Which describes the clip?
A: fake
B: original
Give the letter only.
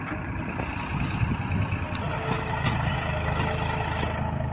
B